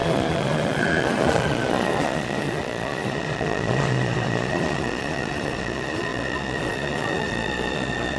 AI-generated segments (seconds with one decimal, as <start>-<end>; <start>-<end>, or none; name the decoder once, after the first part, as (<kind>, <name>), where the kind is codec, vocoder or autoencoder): 0.0-8.2 (vocoder, Vocos)